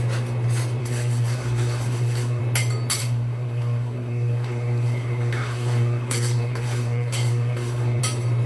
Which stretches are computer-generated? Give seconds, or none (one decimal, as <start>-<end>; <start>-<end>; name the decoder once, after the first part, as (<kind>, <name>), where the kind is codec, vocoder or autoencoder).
0.8-2.4 (codec, SNAC); 3.0-8.0